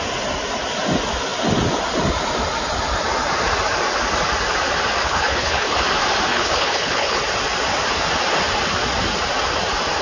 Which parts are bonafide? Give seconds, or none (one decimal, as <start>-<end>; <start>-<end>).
0.0-5.0; 5.8-6.3; 7.2-10.0